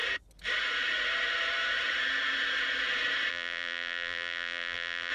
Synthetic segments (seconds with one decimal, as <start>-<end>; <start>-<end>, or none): 3.3-5.1